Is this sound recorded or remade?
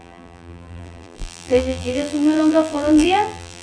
remade